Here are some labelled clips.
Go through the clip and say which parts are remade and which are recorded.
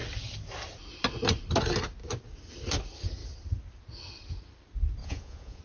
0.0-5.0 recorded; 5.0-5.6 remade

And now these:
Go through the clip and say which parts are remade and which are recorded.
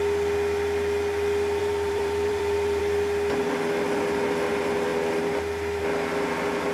0.0-1.6 recorded; 1.6-2.8 remade; 2.8-6.7 recorded